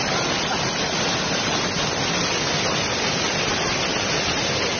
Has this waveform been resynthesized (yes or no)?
no